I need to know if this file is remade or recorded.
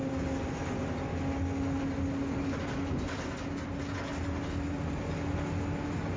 recorded